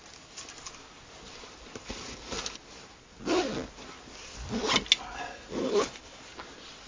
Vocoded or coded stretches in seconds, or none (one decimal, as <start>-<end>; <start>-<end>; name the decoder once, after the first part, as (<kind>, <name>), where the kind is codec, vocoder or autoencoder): 5.6-6.2 (codec, HILCodec)